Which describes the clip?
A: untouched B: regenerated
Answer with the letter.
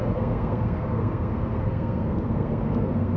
B